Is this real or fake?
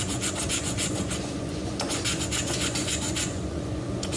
fake